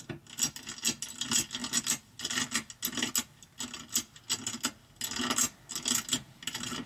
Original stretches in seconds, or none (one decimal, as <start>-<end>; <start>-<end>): 0.0-6.9